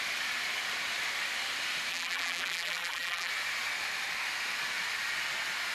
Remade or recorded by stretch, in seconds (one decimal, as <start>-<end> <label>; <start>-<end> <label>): 0.0-1.9 recorded; 1.9-3.3 remade; 3.3-5.7 recorded